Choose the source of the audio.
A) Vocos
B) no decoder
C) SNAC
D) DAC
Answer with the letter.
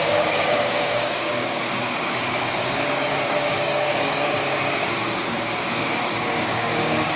D